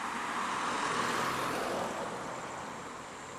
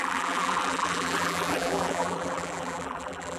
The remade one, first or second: second